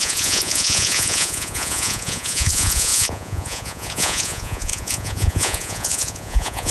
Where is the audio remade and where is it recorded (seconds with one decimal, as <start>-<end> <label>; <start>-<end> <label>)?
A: 0.0-6.7 remade